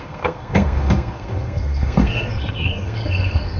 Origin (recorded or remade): remade